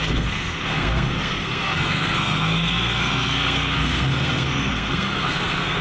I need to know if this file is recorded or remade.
remade